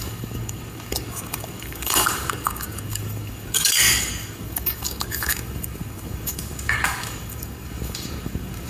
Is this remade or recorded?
remade